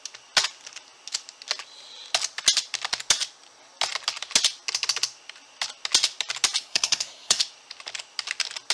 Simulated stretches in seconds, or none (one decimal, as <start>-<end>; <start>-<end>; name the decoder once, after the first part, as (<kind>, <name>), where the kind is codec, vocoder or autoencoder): 6.6-7.4 (codec, SNAC)